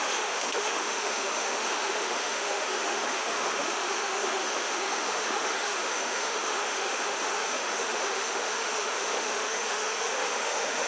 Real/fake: fake